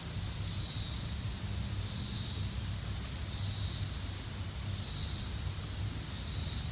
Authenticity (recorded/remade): recorded